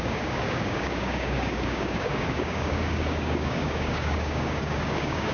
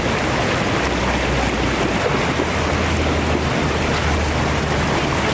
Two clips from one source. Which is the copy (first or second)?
first